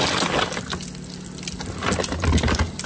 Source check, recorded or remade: recorded